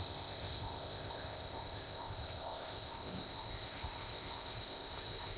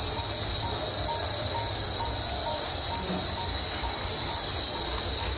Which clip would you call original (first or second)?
second